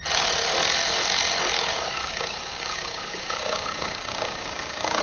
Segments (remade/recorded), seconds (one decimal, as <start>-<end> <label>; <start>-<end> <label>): 0.0-1.7 recorded; 1.7-5.0 remade